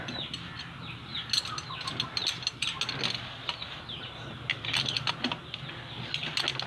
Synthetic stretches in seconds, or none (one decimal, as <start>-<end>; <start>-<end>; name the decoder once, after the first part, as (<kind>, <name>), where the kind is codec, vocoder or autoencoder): none